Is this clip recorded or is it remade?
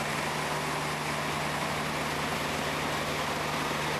recorded